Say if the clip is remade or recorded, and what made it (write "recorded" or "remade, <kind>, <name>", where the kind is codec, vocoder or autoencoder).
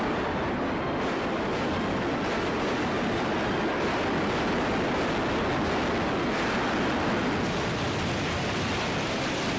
recorded